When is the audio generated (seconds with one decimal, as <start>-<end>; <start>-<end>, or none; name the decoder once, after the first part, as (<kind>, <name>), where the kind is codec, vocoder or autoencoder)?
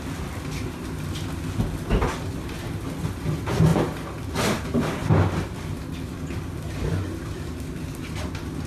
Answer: none